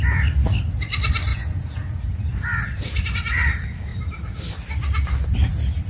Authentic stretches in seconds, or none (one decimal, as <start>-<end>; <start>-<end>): 0.0-1.3; 2.2-5.9